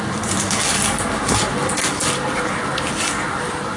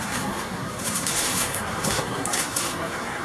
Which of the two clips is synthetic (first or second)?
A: second